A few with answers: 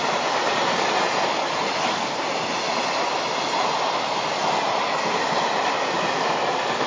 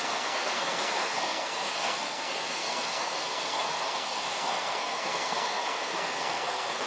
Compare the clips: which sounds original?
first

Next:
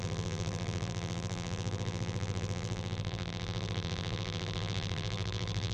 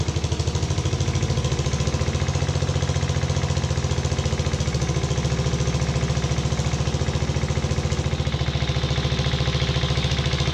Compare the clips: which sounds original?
second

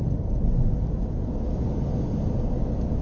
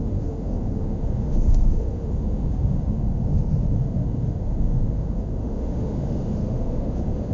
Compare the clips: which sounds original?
first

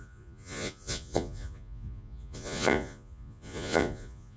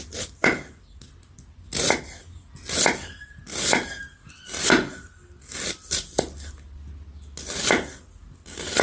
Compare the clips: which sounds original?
second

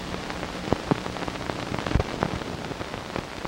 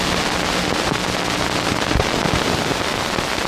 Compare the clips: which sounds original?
second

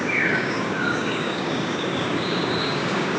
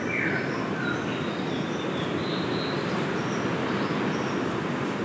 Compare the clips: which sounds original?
second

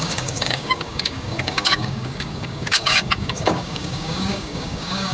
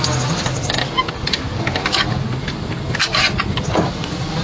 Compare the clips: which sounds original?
second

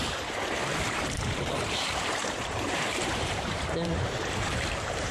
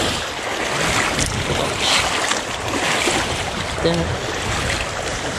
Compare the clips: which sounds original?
second